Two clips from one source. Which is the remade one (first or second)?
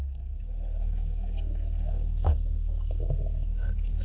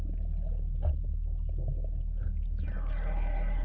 first